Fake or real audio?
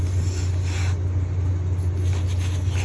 real